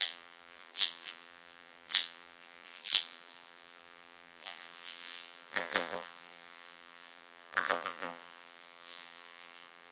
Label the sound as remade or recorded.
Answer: remade